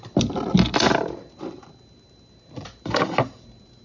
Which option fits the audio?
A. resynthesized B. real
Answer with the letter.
B